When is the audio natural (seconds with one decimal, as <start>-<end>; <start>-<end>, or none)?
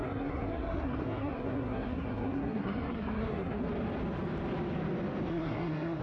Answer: 3.6-5.3